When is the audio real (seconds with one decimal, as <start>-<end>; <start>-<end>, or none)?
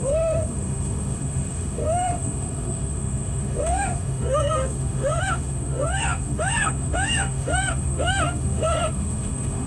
none